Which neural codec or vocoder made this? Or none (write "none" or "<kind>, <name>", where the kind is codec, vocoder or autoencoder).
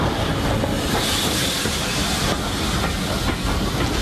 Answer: none